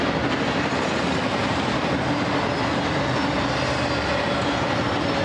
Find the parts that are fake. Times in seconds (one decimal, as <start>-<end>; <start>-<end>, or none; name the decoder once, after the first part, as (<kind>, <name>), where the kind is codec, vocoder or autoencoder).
1.4-2.1 (vocoder, BigVGAN v2)